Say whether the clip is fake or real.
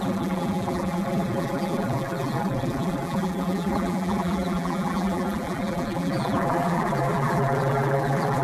fake